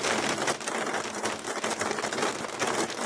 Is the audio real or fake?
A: real